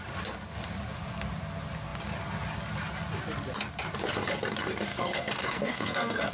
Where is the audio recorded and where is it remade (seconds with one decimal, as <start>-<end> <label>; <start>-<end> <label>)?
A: 0.0-4.9 recorded; 4.9-6.3 remade